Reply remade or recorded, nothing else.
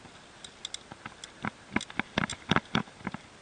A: recorded